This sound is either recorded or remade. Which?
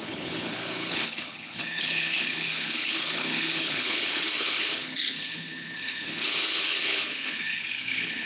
remade